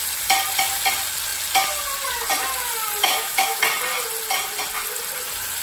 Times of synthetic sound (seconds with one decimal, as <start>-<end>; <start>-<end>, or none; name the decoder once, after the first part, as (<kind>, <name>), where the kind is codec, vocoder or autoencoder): 3.0-3.6 (autoencoder, DAC-VAE)